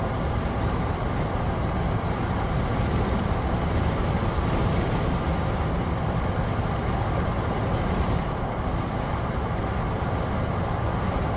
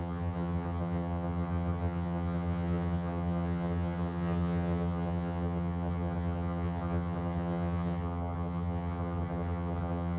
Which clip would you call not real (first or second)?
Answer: second